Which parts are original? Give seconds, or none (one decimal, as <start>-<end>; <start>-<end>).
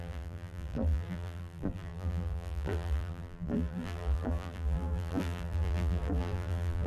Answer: none